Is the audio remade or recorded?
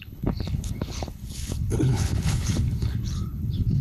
remade